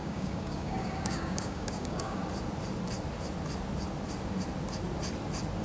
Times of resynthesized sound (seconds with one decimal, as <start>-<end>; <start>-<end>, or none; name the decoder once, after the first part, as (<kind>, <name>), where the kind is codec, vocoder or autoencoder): 0.0-2.2 (codec, DAC)